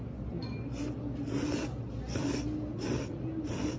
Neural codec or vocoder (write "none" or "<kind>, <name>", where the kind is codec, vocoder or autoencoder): none